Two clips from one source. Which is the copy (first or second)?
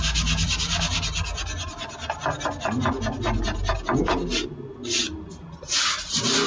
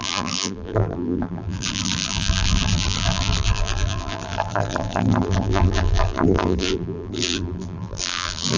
second